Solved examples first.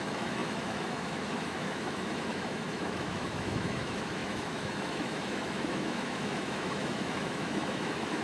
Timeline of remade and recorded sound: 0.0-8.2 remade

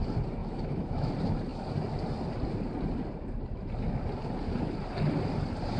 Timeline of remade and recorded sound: 0.0-0.4 recorded; 0.4-1.1 remade; 1.1-5.8 recorded

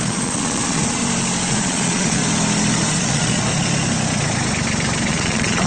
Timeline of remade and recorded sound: 0.0-1.0 remade; 1.0-1.5 recorded; 1.5-2.2 remade; 2.2-2.9 recorded; 2.9-3.5 remade; 3.5-5.1 recorded; 5.1-5.7 remade

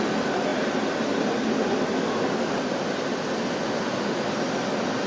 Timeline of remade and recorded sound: 0.0-0.5 recorded; 0.5-3.6 remade; 3.6-5.1 recorded

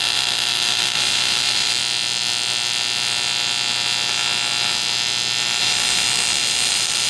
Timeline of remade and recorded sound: 0.0-1.8 remade; 1.8-5.6 recorded; 5.6-7.1 remade

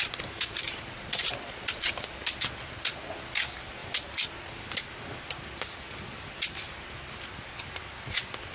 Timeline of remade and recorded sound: 0.0-8.5 recorded

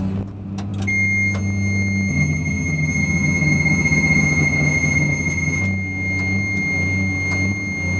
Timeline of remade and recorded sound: 0.0-2.1 recorded; 2.1-5.6 remade; 5.6-8.0 recorded

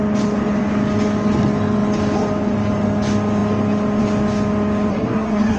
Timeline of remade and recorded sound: 0.0-4.9 recorded; 4.9-5.6 remade